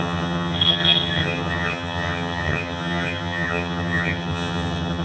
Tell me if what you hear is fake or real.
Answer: fake